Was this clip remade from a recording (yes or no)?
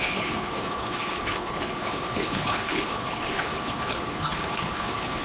yes